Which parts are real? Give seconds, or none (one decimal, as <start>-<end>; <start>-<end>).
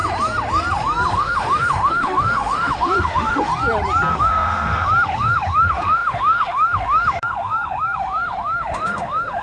0.0-1.1; 3.5-4.1